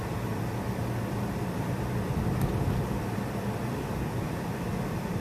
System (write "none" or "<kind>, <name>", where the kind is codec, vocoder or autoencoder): vocoder, BigVGAN v2